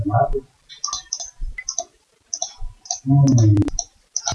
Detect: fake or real real